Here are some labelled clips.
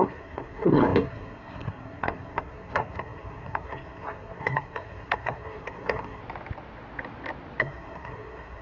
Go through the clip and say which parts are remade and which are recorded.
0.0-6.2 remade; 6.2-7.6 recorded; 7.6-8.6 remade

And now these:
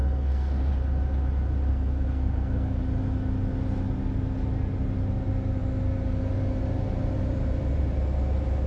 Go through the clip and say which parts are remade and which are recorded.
0.0-0.7 remade; 0.7-1.7 recorded; 1.7-2.8 remade; 2.8-8.7 recorded

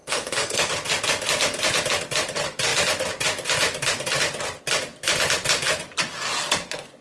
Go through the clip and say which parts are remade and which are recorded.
0.0-0.7 remade; 0.7-7.0 recorded

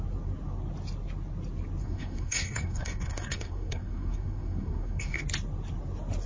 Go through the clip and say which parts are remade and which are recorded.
0.0-1.8 recorded; 1.8-5.2 remade; 5.2-6.3 recorded

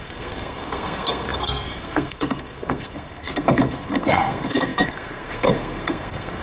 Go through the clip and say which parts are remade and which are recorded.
0.0-6.4 remade